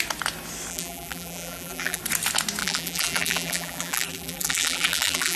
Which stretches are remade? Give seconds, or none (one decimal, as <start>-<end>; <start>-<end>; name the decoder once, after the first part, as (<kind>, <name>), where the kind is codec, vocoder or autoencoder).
0.7-2.0 (vocoder, BigVGAN v2); 2.6-5.4